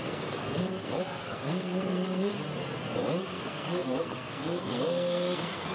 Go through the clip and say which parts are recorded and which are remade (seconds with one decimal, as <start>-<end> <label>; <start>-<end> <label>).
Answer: 0.0-2.3 remade; 2.3-3.2 recorded; 3.2-5.7 remade